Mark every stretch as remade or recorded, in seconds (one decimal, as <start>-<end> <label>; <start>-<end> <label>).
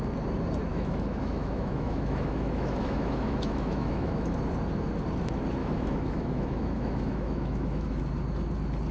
0.0-0.7 recorded; 0.7-4.4 remade; 4.4-5.6 recorded; 5.6-8.0 remade; 8.0-8.9 recorded